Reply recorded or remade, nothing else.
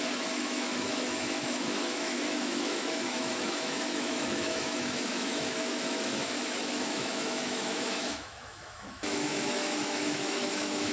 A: remade